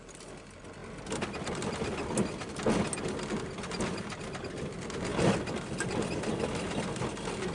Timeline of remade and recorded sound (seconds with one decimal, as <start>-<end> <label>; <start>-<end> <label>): 0.0-7.5 recorded